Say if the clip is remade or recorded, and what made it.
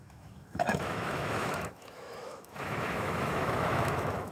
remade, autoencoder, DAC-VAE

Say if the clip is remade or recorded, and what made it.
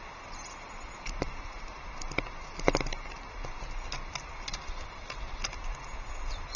recorded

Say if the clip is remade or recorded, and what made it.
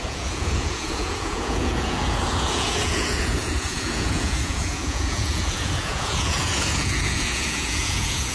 remade, vocoder, Vocos